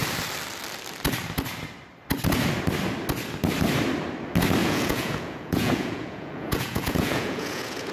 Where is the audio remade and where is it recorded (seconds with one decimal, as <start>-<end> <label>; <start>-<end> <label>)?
0.0-4.6 recorded; 4.6-7.9 remade